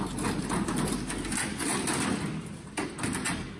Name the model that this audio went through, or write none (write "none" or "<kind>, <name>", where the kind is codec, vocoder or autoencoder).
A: none